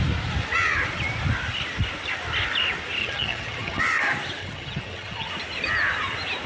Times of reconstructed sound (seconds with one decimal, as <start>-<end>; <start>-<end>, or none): 3.0-3.8; 4.4-5.3